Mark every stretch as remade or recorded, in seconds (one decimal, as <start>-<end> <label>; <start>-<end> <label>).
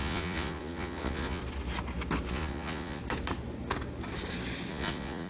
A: 0.0-1.4 remade; 1.4-2.3 recorded; 2.3-3.0 remade; 3.0-4.7 recorded; 4.7-5.3 remade